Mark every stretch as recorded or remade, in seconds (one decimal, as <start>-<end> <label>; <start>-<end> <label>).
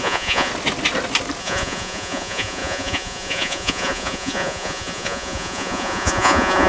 0.0-0.5 remade; 0.5-1.4 recorded; 1.4-6.7 remade